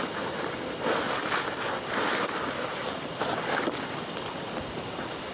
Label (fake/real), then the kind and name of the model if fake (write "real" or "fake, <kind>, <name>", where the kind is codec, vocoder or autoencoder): real